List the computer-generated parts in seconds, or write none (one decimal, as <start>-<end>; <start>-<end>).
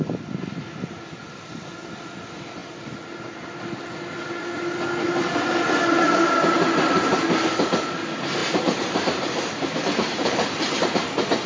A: 8.4-11.1